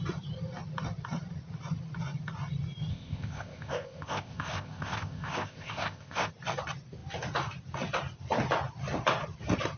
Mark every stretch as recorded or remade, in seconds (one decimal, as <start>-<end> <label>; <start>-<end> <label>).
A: 0.0-2.9 recorded; 2.9-6.3 remade; 6.3-9.8 recorded